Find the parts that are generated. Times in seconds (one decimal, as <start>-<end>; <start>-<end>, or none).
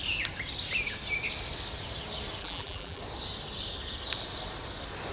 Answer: 2.4-3.0